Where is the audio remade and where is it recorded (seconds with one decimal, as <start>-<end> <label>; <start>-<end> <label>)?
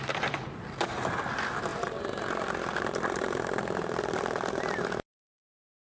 0.0-5.9 recorded